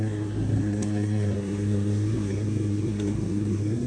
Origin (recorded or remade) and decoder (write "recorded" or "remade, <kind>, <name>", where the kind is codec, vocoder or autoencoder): remade, codec, SNAC